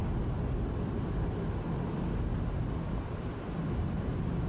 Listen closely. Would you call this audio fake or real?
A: real